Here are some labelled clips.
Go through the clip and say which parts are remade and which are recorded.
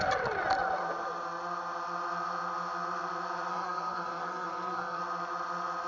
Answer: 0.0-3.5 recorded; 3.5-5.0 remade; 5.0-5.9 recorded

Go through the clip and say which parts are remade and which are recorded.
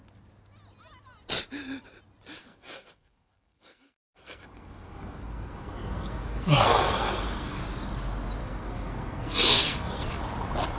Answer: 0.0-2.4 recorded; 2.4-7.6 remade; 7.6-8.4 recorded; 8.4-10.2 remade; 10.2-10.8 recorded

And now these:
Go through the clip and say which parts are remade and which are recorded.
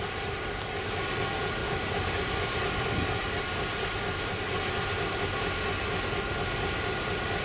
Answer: 0.0-7.4 recorded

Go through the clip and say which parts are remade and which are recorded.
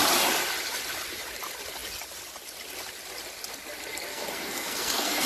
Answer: 0.0-4.1 recorded; 4.1-5.3 remade